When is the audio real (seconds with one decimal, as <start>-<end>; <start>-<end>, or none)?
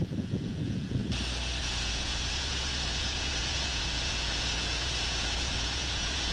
1.0-1.6